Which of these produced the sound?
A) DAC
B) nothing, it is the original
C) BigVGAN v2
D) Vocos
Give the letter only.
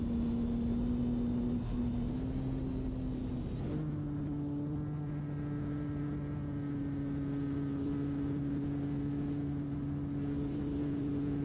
B